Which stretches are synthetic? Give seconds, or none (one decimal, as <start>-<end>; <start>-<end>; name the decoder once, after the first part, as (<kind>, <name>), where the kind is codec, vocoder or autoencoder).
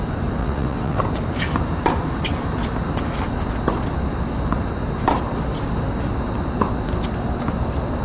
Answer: 0.4-1.0 (vocoder, WaveNeXt)